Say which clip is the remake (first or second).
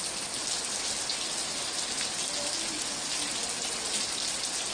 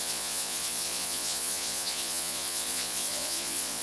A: second